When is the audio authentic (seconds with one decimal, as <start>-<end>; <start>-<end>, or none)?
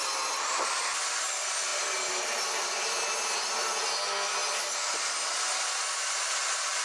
0.0-6.8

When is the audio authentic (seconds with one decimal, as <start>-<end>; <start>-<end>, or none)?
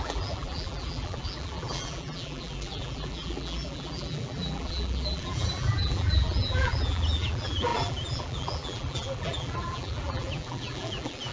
none